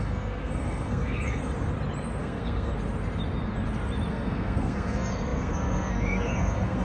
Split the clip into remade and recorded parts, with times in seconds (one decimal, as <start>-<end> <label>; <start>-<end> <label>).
0.0-1.4 remade; 1.4-2.2 recorded; 2.2-2.7 remade; 2.7-4.1 recorded; 4.1-6.8 remade